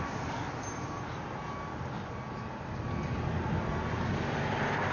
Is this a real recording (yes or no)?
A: yes